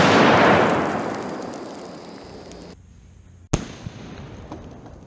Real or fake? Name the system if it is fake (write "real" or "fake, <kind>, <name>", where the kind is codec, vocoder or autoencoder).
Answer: real